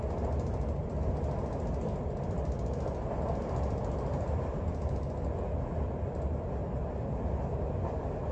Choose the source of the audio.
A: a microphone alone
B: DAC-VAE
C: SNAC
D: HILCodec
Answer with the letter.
A